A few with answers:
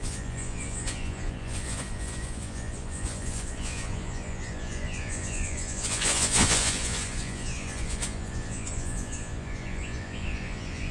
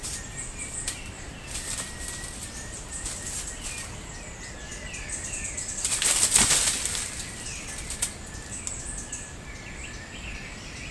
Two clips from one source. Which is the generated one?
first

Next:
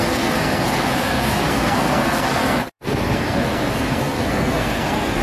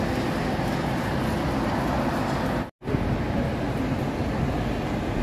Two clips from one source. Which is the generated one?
first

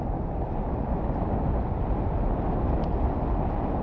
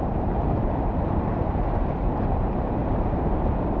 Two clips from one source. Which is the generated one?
second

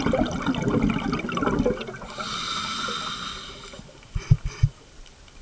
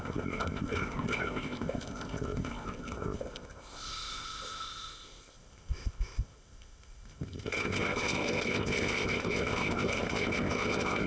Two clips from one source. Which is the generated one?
second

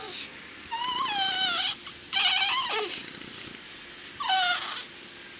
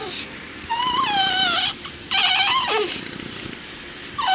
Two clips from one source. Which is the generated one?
second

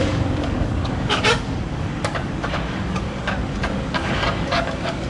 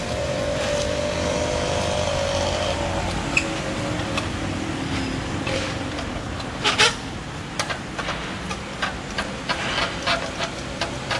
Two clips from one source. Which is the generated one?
first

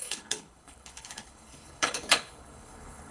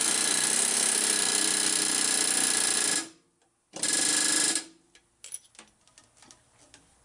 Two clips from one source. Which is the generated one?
first